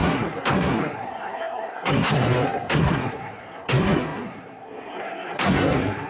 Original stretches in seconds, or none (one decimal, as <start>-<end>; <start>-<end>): none